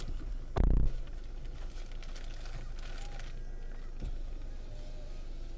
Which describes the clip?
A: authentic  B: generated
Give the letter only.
A